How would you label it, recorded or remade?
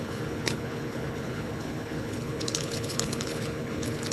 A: remade